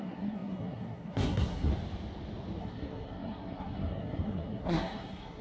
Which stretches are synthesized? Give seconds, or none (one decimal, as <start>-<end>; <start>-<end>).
0.0-1.7; 2.6-5.4